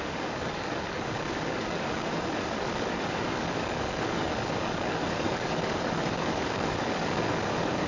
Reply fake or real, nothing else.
fake